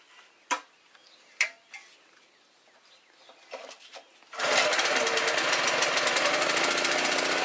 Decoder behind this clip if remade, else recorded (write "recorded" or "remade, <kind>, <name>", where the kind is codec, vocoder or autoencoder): recorded